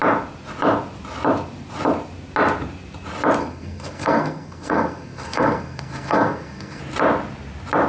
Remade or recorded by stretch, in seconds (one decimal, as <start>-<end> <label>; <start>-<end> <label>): 0.0-3.4 recorded; 3.4-6.8 remade; 6.8-7.9 recorded

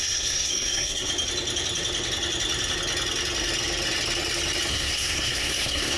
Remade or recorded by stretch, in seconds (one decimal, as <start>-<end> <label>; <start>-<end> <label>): 0.0-1.1 remade; 1.1-4.7 recorded; 4.7-6.0 remade

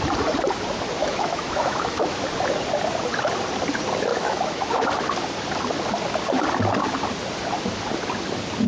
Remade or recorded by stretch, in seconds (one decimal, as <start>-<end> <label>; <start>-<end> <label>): 0.0-1.0 recorded; 1.0-2.2 remade; 2.2-4.1 recorded; 4.1-4.7 remade; 4.7-8.7 recorded

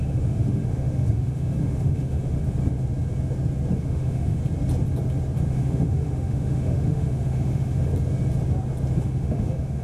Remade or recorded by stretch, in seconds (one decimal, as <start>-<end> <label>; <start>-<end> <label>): 0.0-2.4 remade; 2.4-3.8 recorded; 3.8-4.4 remade; 4.4-5.5 recorded; 5.5-7.9 remade; 7.9-9.0 recorded; 9.0-9.8 remade

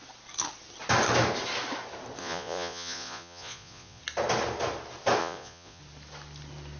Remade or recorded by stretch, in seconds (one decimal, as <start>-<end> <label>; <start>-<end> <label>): 0.0-2.2 recorded; 2.2-4.0 remade; 4.0-5.2 recorded; 5.2-5.8 remade; 5.8-6.8 recorded

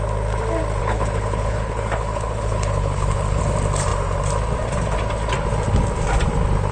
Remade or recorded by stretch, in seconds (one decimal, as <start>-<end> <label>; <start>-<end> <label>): 0.0-0.8 recorded; 0.8-3.4 remade; 3.4-6.7 recorded